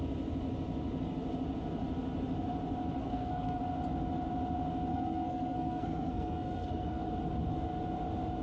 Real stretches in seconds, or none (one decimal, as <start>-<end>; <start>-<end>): 0.0-3.0; 3.6-4.9; 7.0-8.4